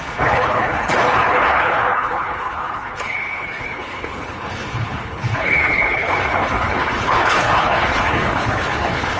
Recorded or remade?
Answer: remade